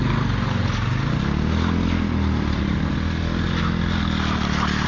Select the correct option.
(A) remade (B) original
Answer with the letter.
B